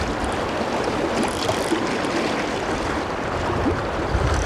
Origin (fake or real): real